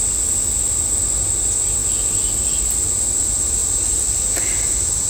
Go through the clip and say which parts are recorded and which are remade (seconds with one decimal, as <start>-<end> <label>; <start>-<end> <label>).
0.0-5.1 recorded